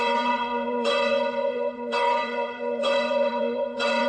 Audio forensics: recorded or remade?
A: remade